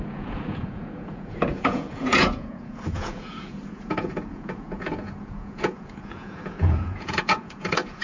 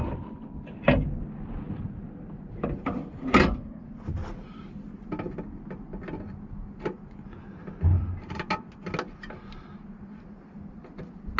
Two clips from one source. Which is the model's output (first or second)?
first